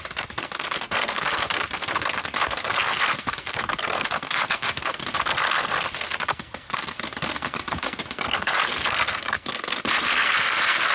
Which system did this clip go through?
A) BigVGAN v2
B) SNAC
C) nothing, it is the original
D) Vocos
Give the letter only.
B